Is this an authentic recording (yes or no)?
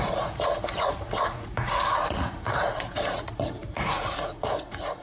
no